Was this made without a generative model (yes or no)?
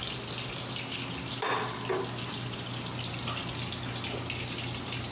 yes